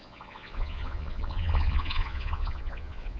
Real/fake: fake